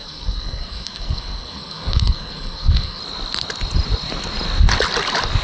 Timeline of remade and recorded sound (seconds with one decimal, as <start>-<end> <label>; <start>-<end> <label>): 0.0-3.0 remade; 3.0-5.4 recorded